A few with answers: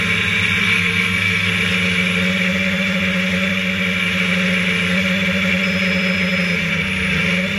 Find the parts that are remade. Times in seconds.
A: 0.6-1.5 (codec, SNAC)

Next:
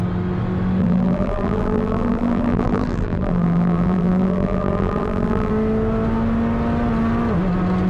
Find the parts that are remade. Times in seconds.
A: 0.8-5.5 (vocoder, BigVGAN v2)

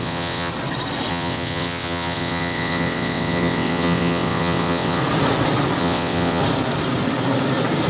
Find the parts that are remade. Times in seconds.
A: 0.0-0.5 (vocoder, WaveNeXt); 1.1-5.0; 5.8-6.4

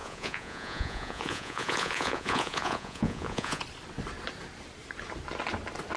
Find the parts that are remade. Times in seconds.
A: 0.0-3.6 (vocoder, Vocos)

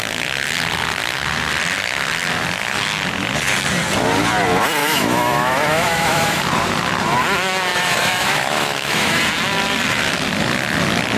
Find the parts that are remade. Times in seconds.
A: 4.8-6.4 (autoencoder, DAC-VAE); 7.7-9.2

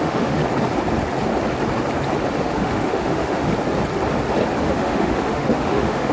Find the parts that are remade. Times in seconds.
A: 0.0-0.4 (autoencoder, DAC-VAE); 2.4-3.5; 4.6-6.1

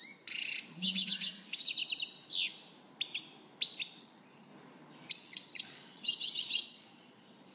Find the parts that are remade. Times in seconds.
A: 0.0-1.8 (vocoder, Vocos); 4.0-4.5; 5.1-7.5